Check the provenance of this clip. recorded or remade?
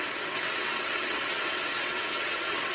remade